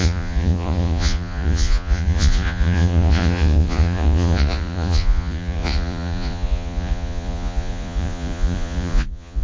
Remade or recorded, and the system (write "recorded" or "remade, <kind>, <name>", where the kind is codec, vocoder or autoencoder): remade, vocoder, Vocos